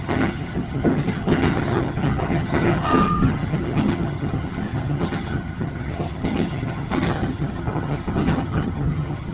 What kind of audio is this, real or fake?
fake